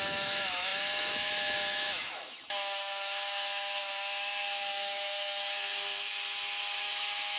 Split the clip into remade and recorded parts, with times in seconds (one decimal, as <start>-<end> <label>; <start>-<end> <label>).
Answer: 0.0-6.1 remade; 6.1-6.8 recorded; 6.8-7.4 remade

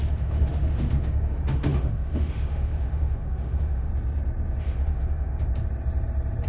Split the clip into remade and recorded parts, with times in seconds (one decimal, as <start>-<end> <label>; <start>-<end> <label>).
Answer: 0.0-3.9 remade; 3.9-4.6 recorded; 4.6-5.5 remade; 5.5-6.5 recorded

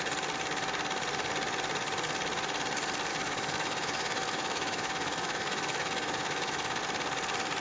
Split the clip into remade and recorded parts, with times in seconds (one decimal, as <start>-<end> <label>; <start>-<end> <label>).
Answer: 0.0-3.1 recorded; 3.1-6.8 remade; 6.8-7.6 recorded

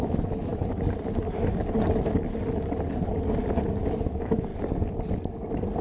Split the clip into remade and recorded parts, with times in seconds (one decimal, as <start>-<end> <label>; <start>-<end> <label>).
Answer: 0.0-0.5 remade; 0.5-4.0 recorded; 4.0-4.5 remade; 4.5-5.8 recorded

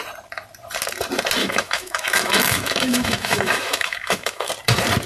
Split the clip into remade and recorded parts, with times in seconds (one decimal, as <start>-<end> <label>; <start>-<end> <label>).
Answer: 0.0-1.4 recorded; 1.4-4.5 remade; 4.5-5.1 recorded

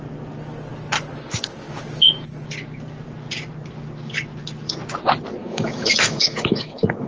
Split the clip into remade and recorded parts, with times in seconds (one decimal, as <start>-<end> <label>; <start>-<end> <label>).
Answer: 0.0-5.4 recorded; 5.4-7.1 remade

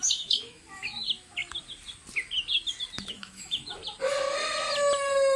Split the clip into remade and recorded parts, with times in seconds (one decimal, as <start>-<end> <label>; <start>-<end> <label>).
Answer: 0.0-1.4 remade; 1.4-3.0 recorded; 3.0-3.8 remade; 3.8-5.4 recorded

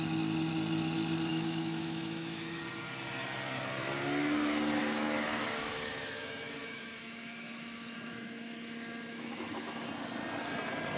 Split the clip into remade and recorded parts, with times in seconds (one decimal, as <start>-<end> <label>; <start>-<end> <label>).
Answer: 0.0-1.3 recorded; 1.3-2.6 remade; 2.6-4.8 recorded; 4.8-9.9 remade; 9.9-11.0 recorded